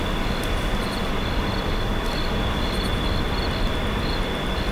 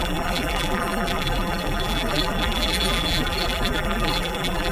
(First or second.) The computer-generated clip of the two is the second